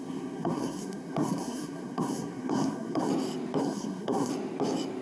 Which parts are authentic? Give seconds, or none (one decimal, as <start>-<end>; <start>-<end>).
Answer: 3.1-3.6; 4.3-5.0